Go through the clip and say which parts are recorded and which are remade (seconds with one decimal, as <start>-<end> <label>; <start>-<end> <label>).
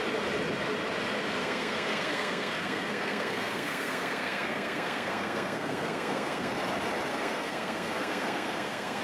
0.0-1.4 recorded; 1.4-6.5 remade; 6.5-7.1 recorded; 7.1-9.0 remade